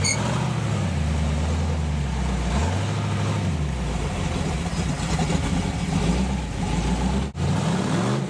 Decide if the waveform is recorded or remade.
recorded